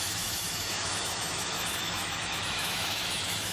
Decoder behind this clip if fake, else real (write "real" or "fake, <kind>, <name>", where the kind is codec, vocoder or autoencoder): fake, autoencoder, DAC-VAE